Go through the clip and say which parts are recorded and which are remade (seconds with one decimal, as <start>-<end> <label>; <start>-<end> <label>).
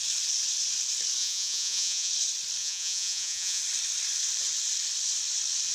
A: 0.0-1.2 recorded; 1.2-2.1 remade; 2.1-2.6 recorded; 2.6-3.6 remade; 3.6-5.7 recorded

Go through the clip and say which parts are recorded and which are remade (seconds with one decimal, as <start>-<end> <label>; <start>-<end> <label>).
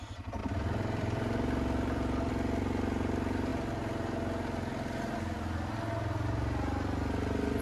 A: 0.0-0.4 recorded; 0.4-2.3 remade; 2.3-7.6 recorded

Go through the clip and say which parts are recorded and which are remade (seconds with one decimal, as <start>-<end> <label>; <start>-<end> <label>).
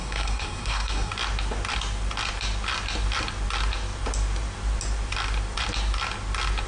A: 0.0-1.1 remade; 1.1-6.7 recorded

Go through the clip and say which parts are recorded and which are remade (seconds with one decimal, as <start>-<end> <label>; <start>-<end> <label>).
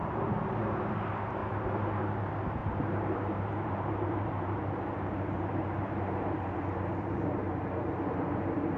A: 0.0-1.4 remade; 1.4-2.0 recorded; 2.0-8.8 remade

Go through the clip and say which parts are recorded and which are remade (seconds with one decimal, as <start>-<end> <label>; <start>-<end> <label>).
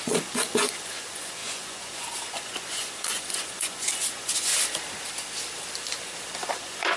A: 0.0-4.5 remade; 4.5-6.5 recorded; 6.5-7.0 remade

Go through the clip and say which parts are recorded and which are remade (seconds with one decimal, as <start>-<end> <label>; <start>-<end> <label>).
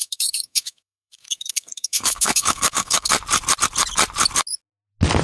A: 0.0-3.1 remade; 3.1-5.2 recorded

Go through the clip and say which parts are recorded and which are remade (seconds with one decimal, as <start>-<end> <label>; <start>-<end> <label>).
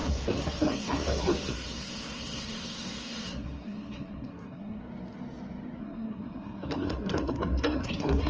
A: 0.0-4.8 remade; 4.8-5.8 recorded; 5.8-8.3 remade